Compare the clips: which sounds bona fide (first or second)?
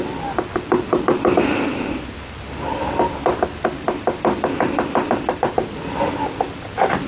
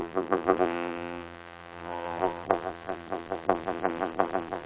first